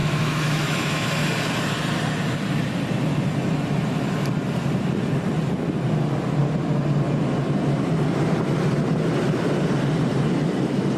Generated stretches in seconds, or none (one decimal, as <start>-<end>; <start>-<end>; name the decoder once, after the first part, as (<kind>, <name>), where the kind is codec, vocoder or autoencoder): 0.0-1.1 (autoencoder, DAC-VAE)